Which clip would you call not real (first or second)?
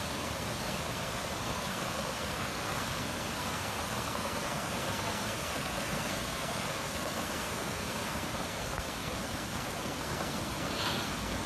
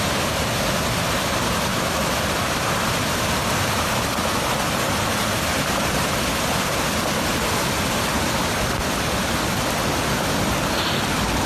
first